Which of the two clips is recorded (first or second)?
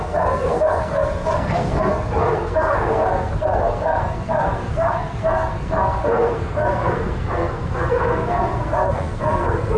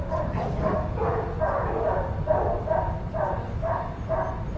second